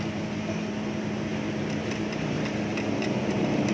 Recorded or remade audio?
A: remade